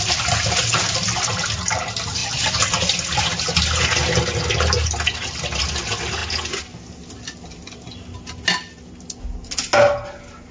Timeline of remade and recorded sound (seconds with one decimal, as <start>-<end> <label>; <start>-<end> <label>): 0.0-10.5 recorded